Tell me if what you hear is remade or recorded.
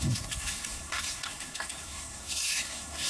remade